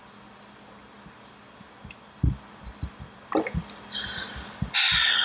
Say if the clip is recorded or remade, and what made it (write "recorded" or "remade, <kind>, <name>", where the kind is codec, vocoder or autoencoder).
recorded